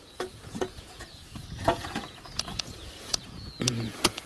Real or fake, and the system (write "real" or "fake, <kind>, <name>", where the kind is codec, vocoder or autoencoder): fake, vocoder, Vocos